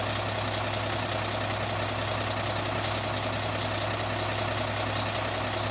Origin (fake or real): real